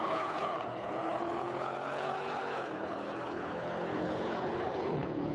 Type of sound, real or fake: fake